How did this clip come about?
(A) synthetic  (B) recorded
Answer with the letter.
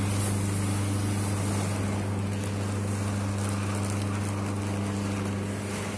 B